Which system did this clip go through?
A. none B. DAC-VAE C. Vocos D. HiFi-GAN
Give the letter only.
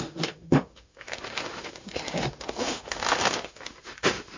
B